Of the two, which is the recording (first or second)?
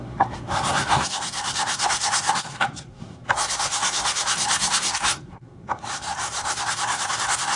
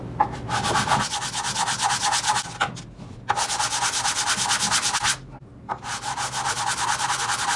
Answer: second